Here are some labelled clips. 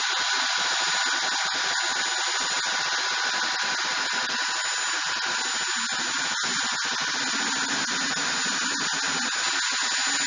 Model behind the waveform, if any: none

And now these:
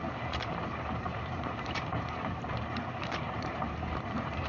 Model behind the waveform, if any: vocoder, BigVGAN v2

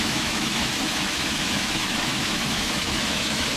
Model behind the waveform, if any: autoencoder, DAC-VAE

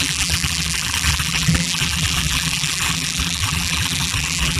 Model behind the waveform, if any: vocoder, BigVGAN v2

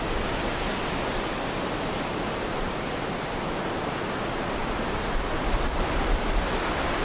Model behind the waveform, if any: none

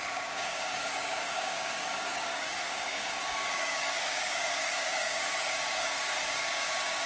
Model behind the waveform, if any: codec, DAC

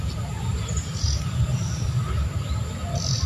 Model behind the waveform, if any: none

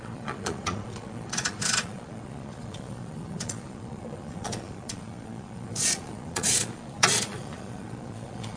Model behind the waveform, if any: vocoder, Vocos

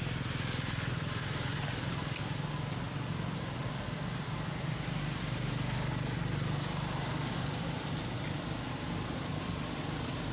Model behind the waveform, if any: none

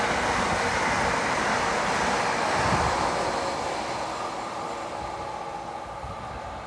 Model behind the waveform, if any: none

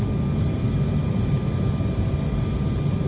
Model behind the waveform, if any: none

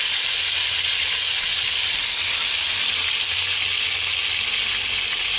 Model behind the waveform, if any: none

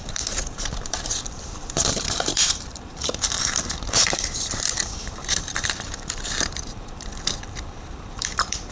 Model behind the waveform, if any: vocoder, BigVGAN v2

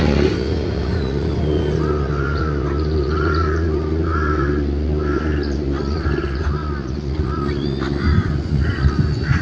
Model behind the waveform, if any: vocoder, Vocos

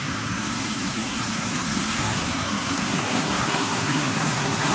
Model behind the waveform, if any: codec, SNAC